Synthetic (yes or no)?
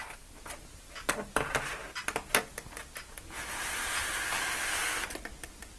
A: no